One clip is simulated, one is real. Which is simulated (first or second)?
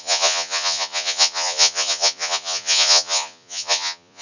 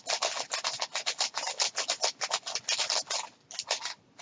first